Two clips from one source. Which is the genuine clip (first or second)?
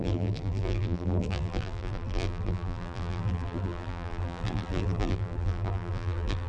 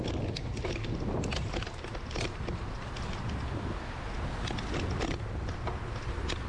second